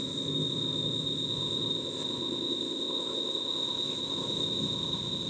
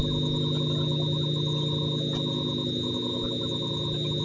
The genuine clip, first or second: second